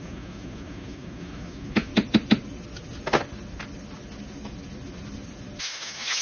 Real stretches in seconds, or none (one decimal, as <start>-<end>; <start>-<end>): 1.9-5.6